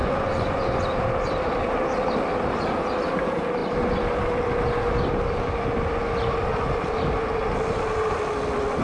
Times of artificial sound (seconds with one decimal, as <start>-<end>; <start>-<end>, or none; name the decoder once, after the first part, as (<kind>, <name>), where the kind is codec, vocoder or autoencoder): 0.0-0.8 (vocoder, Vocos)